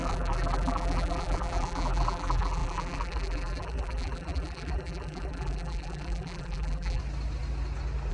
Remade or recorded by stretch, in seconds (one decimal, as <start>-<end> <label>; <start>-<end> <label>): 0.0-7.0 remade; 7.0-8.1 recorded